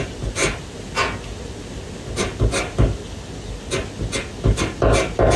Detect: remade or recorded recorded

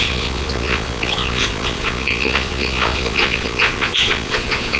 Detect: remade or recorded remade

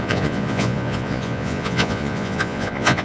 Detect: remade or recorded remade